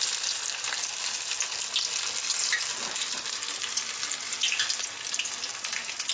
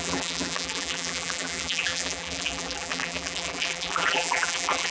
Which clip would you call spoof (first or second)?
second